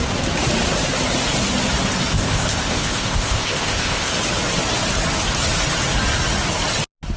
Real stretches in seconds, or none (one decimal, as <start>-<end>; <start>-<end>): 0.0-2.1; 4.1-7.2

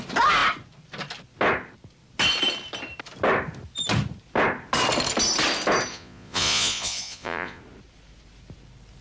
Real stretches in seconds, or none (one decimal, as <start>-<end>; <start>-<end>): 0.0-5.9; 7.6-9.0

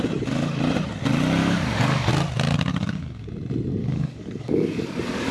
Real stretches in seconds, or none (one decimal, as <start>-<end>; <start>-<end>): 0.0-1.4; 2.1-2.7; 3.3-3.8

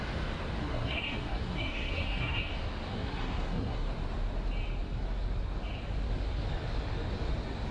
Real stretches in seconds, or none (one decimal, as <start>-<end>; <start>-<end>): 0.0-0.6; 2.5-2.9; 3.9-7.7

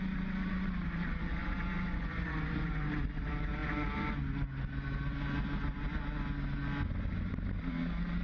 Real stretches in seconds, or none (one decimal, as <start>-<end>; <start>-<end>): 0.0-1.4; 2.9-8.2

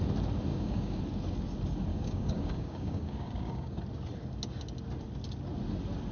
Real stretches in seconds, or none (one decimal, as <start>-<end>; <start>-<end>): 0.0-0.5; 1.0-1.9; 3.8-6.1

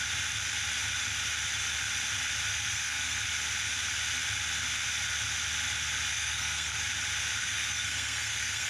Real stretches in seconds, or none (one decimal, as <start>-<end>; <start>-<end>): 0.0-2.5; 3.2-6.1; 6.8-7.4

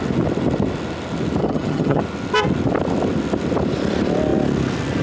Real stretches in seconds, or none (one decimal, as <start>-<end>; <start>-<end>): 0.0-1.4; 2.0-5.0